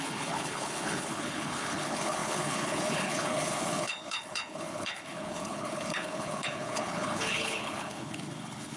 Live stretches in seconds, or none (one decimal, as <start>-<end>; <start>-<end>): none

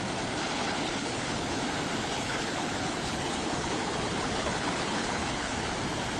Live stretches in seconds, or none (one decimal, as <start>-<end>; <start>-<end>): 0.0-0.4; 1.6-2.0; 5.7-6.2

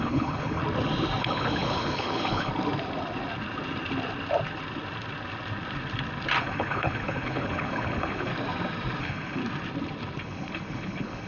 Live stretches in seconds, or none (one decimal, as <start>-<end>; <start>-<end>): 0.6-1.2; 2.5-6.4; 8.3-9.0; 9.4-10.2

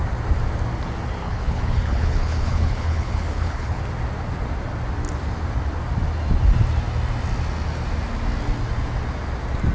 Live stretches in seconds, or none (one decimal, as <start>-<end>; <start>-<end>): 0.0-1.2; 3.8-9.7

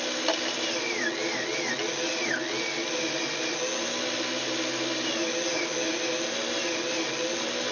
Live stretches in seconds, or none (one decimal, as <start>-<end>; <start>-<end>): 0.0-7.7

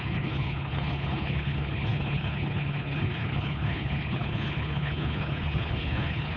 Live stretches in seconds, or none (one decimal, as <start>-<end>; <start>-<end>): none

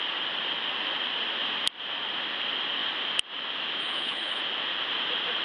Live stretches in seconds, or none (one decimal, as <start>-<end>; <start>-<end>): 0.0-3.8; 4.4-5.4

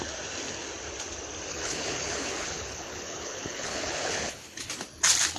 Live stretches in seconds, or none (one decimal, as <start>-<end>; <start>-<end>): 0.0-1.5; 4.7-5.4